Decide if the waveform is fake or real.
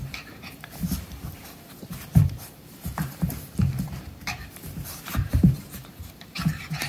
fake